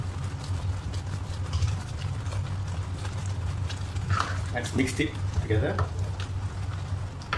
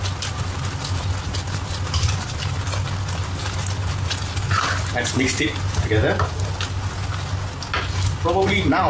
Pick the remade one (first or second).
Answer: first